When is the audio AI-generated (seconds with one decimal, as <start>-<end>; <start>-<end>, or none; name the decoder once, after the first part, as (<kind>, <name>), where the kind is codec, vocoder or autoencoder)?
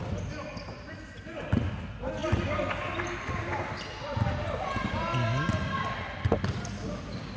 none